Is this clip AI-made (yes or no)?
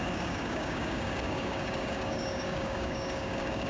yes